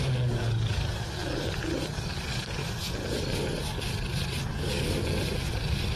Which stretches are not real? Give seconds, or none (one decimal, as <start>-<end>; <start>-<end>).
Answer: 0.0-1.2; 1.9-2.6; 4.5-5.0